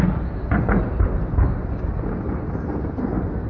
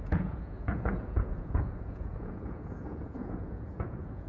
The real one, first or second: first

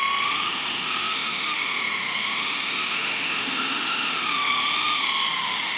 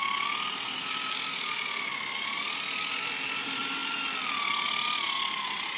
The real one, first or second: second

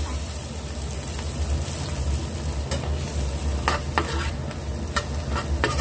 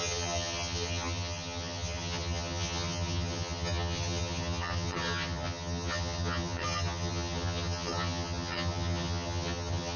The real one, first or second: first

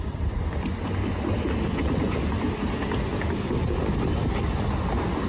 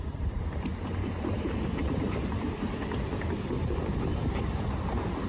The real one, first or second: first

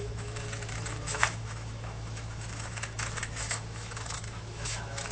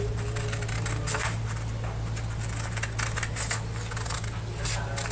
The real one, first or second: second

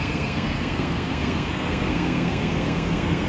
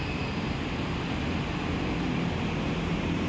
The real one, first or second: second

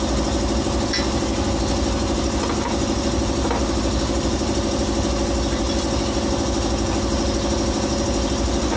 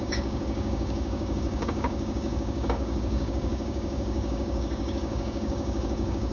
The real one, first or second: first